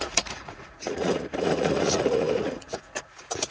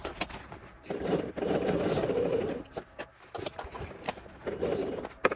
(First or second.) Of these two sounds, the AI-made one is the first